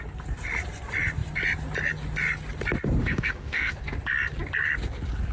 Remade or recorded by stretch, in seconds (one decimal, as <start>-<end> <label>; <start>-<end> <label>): 0.0-3.0 recorded; 3.0-3.7 remade; 3.7-5.3 recorded